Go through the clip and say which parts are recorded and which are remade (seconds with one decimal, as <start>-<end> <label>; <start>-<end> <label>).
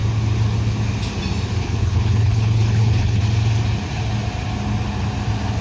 0.0-1.6 recorded; 1.6-3.2 remade; 3.2-5.6 recorded